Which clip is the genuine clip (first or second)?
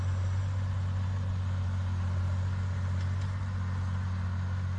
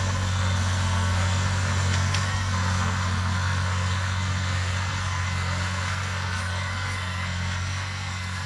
first